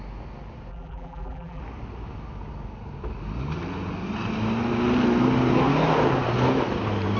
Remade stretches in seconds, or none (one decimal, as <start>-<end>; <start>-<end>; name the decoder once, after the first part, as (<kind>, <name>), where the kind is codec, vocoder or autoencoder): 0.7-1.6 (vocoder, BigVGAN v2)